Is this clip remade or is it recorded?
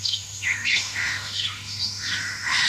remade